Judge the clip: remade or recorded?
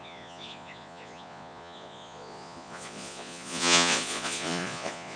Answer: remade